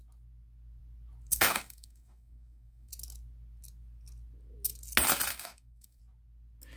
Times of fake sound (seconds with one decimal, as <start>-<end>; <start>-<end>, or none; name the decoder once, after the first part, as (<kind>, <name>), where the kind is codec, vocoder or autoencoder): 1.3-2.9 (codec, DAC); 5.3-6.0